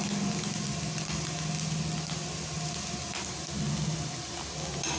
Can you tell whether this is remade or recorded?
recorded